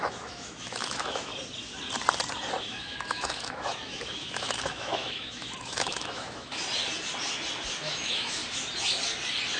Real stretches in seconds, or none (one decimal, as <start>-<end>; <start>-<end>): 1.3-2.6; 6.6-7.8; 8.4-9.6